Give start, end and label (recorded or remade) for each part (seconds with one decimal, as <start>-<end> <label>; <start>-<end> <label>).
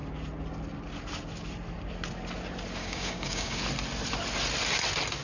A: 0.0-2.8 recorded; 2.8-3.6 remade; 3.6-5.2 recorded